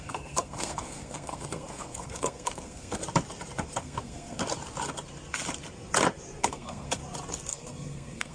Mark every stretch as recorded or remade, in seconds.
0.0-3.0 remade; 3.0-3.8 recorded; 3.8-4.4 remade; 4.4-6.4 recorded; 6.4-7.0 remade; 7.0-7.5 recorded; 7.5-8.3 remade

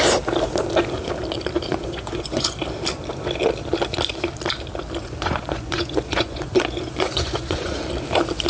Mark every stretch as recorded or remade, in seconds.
0.0-1.7 recorded; 1.7-2.6 remade; 2.6-5.0 recorded; 5.0-7.7 remade; 7.7-8.5 recorded

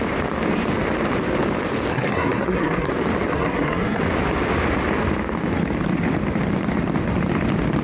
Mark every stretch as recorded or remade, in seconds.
0.0-1.9 recorded; 1.9-2.9 remade; 2.9-3.3 recorded; 3.3-4.0 remade; 4.0-7.8 recorded

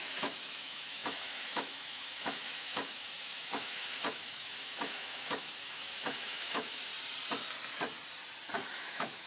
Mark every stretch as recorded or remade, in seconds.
0.0-6.9 remade; 6.9-8.7 recorded; 8.7-9.3 remade

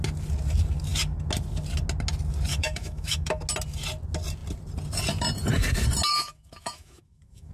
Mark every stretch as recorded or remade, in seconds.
0.0-2.5 recorded; 2.5-3.4 remade; 3.4-6.1 recorded; 6.1-7.5 remade